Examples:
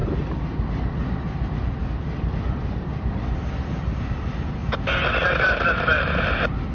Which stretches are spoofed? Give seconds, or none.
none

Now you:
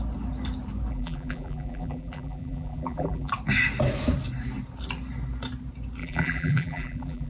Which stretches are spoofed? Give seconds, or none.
0.9-3.3 (vocoder, BigVGAN v2); 6.0-7.3

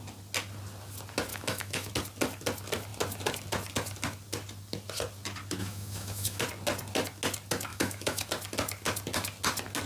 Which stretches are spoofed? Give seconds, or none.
1.3-1.9 (autoencoder, DAC-VAE); 5.6-6.4; 7.7-8.3